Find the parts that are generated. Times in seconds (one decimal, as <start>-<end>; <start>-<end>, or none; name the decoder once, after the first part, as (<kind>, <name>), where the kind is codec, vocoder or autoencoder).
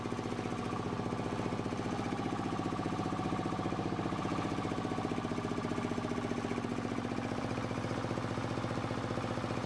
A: none